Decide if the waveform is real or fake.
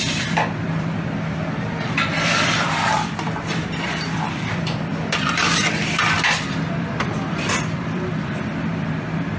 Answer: fake